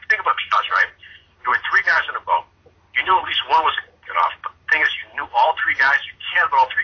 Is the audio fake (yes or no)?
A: yes